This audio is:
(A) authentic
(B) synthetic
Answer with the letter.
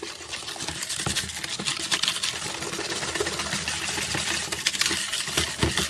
A